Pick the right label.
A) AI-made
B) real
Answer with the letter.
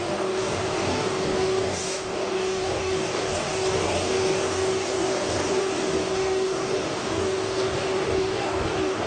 A